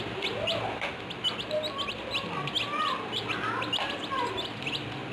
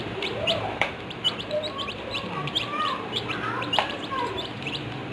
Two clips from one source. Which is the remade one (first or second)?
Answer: second